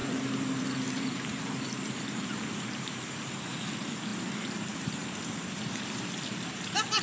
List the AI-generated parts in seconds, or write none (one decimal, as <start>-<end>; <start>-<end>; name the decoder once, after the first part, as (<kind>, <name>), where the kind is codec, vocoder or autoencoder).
0.0-3.4 (vocoder, BigVGAN v2); 4.1-5.5